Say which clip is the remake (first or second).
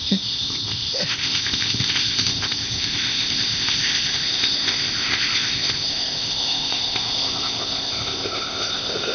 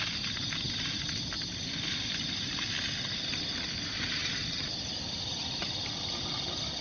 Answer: first